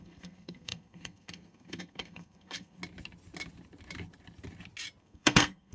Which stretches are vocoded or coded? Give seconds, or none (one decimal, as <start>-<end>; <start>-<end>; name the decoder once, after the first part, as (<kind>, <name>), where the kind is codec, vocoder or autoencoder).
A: 0.0-2.8 (codec, SNAC); 5.0-5.7